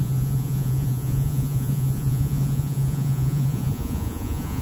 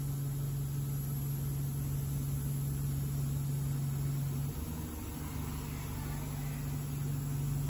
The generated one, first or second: first